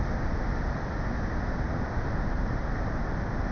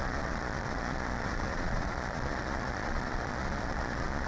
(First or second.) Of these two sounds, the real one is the first